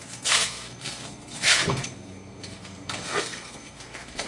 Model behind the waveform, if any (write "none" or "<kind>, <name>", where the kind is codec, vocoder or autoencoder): codec, SNAC